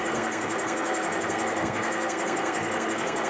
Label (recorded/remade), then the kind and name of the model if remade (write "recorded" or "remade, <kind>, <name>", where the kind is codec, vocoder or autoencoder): remade, codec, SNAC